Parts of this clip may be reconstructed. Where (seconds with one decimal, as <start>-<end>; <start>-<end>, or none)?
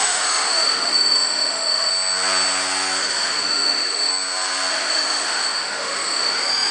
0.0-1.9; 3.0-4.1; 4.7-6.7